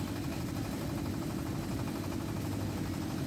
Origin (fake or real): real